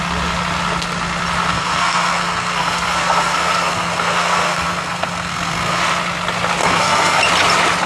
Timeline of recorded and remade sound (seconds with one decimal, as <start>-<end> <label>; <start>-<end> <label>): 0.0-1.5 recorded; 1.5-5.8 remade; 5.8-6.6 recorded; 6.6-7.2 remade; 7.2-7.9 recorded